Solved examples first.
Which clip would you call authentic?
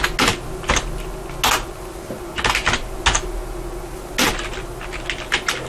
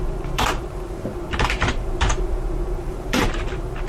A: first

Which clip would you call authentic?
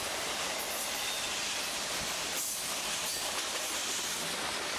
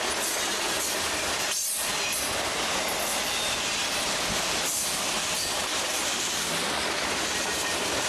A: second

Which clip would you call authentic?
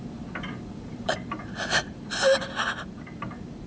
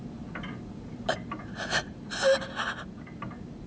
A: second